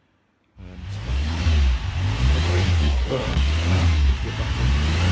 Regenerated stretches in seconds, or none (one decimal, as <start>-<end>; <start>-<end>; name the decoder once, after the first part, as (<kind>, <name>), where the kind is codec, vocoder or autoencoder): 0.9-1.4 (codec, SNAC); 2.5-4.1